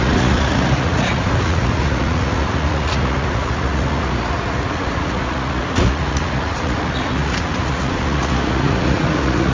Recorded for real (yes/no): no